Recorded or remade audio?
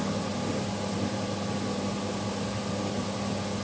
recorded